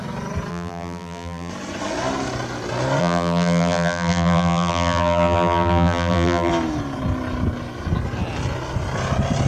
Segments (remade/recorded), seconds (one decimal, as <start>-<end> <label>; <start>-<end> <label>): 0.0-0.5 recorded; 0.5-1.5 remade; 1.5-3.0 recorded; 3.0-6.5 remade; 6.5-9.5 recorded